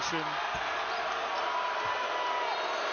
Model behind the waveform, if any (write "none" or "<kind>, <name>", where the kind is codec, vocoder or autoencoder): none